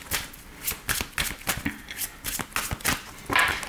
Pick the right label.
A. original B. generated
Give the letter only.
A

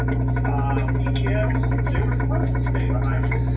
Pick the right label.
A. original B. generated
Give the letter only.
A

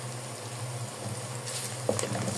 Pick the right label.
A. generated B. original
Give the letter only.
B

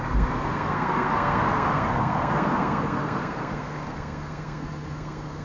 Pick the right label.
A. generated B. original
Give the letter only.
A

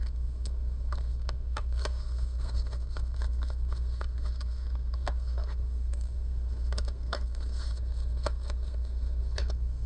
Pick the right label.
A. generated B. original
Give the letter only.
A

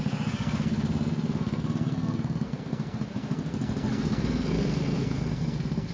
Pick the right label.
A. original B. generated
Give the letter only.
B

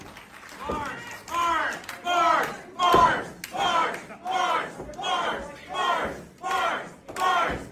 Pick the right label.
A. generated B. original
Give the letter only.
B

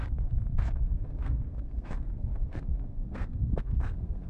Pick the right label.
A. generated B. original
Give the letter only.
A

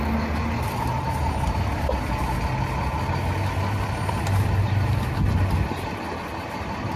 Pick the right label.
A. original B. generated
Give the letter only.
A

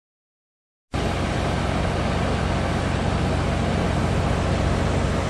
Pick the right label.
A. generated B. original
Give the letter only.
B